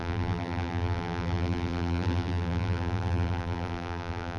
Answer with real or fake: fake